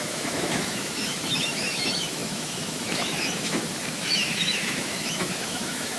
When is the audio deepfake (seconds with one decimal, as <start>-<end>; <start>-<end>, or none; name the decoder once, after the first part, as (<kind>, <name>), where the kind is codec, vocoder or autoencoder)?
0.0-6.0 (autoencoder, DAC-VAE)